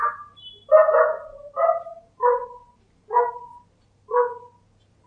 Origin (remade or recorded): recorded